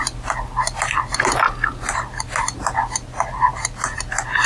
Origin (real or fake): real